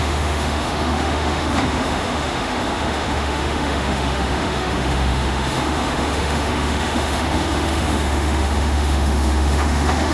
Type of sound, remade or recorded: remade